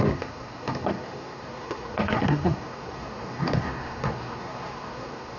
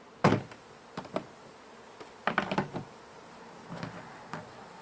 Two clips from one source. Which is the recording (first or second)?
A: second